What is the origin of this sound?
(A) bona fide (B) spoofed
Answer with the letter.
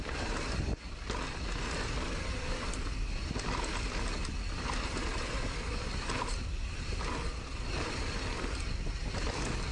A